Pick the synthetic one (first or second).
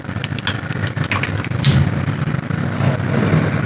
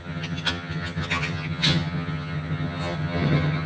second